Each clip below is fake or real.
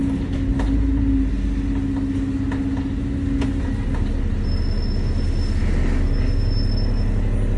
real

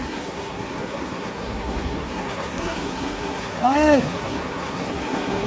fake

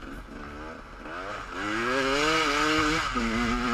real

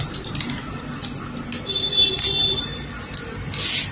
real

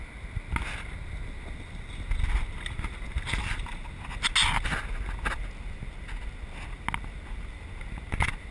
real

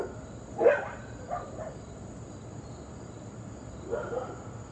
real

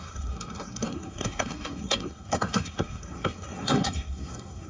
fake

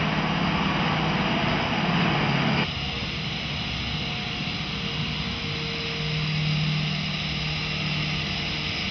real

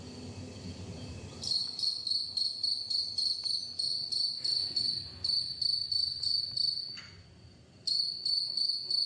real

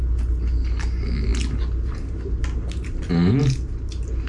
real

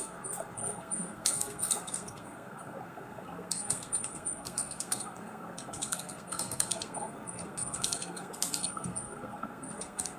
fake